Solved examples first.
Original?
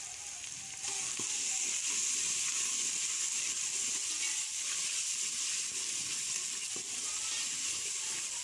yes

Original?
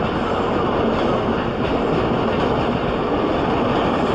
yes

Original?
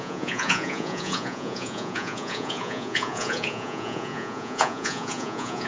no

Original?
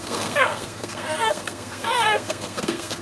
no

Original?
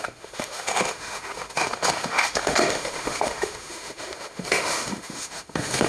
no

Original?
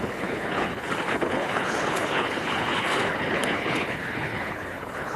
no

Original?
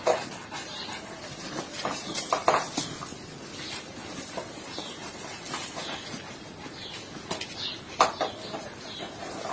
yes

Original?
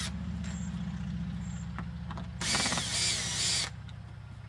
yes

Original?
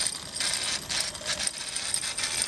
yes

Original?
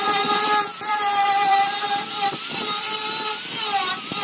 no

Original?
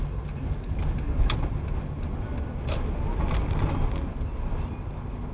yes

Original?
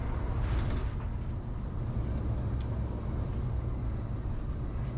yes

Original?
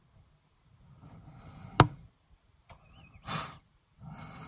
yes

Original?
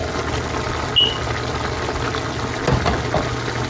yes